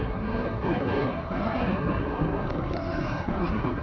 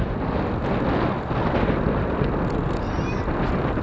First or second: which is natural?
second